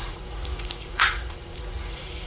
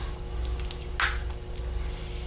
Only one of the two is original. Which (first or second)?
second